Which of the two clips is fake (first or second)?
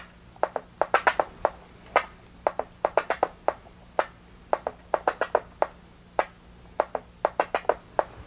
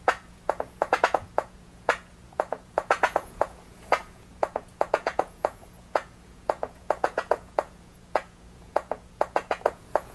second